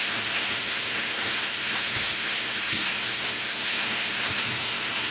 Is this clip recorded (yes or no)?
no